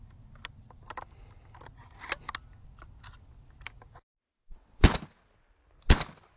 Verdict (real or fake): real